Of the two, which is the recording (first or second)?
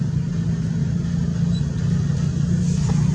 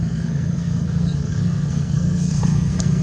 first